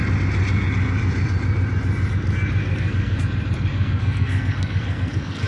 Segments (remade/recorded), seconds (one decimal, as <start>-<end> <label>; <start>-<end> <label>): 0.0-2.6 recorded; 2.6-3.2 remade; 3.2-3.7 recorded; 3.7-5.5 remade